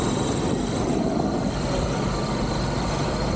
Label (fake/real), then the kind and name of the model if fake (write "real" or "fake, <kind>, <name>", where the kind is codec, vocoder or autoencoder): real